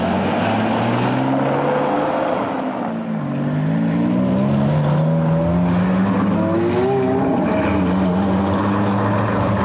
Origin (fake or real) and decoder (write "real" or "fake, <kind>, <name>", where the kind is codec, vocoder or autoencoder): real